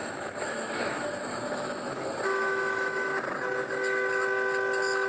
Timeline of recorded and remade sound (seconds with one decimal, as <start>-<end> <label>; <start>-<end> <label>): 0.0-3.1 remade; 3.1-5.1 recorded